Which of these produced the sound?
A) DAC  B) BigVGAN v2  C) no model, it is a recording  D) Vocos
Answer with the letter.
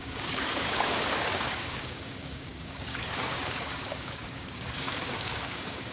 A